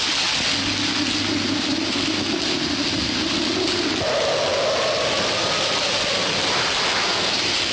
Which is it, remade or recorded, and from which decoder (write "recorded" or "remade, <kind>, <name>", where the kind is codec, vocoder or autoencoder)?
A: recorded